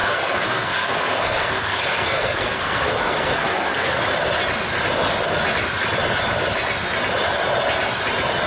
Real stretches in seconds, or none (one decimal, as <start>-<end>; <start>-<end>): 4.0-8.5